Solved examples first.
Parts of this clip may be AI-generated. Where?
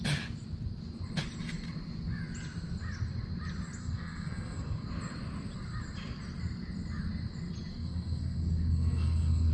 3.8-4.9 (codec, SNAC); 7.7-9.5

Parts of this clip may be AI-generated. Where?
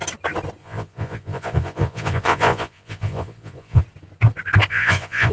0.6-3.8 (vocoder, Vocos); 4.7-5.3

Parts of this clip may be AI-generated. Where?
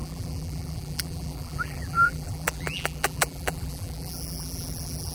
0.0-5.1 (vocoder, BigVGAN v2)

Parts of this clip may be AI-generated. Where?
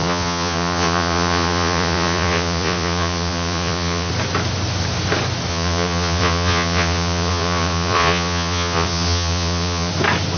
0.0-4.1 (vocoder, Vocos); 5.5-9.9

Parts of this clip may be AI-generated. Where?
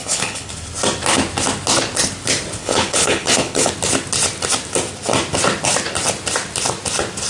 0.0-0.5 (codec, HILCodec); 2.6-3.7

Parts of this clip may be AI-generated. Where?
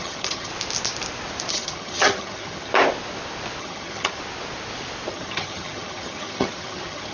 0.0-0.5 (vocoder, HiFi-GAN); 1.5-2.7; 3.6-4.2; 5.1-7.1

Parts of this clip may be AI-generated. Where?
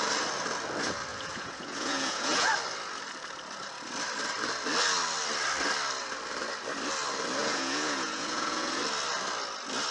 1.1-2.5 (vocoder, Vocos); 7.4-8.8